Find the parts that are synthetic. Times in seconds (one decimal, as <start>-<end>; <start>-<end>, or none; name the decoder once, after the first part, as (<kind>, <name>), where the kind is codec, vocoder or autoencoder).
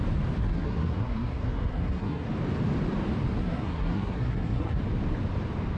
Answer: 0.4-2.3 (codec, SNAC); 3.3-4.8